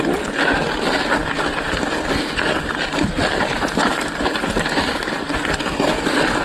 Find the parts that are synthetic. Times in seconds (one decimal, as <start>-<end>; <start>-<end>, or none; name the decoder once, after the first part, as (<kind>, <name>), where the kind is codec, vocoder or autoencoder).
3.2-5.6 (vocoder, BigVGAN v2)